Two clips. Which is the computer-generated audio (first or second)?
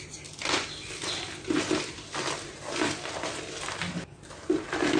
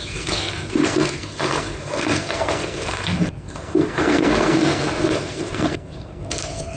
second